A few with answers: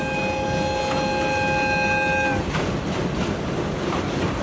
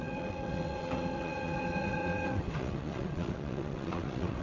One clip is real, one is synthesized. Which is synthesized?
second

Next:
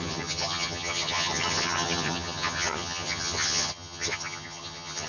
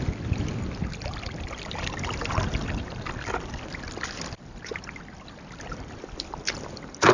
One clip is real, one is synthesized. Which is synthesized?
first